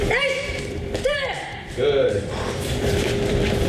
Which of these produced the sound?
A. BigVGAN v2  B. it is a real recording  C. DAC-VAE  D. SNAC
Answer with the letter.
A